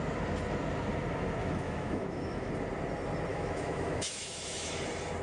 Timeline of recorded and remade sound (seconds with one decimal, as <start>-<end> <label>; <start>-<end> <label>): 0.0-1.4 recorded; 1.4-2.5 remade; 2.5-3.3 recorded; 3.3-4.7 remade; 4.7-5.2 recorded

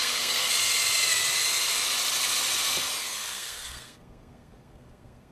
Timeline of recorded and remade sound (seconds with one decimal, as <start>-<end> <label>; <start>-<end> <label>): 0.0-0.5 remade; 0.5-3.0 recorded; 3.0-5.3 remade